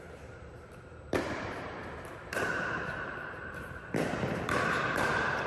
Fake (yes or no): yes